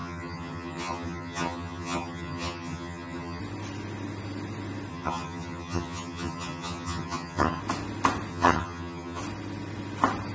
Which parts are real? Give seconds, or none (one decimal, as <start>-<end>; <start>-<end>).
3.4-4.9; 7.6-8.3; 9.2-10.3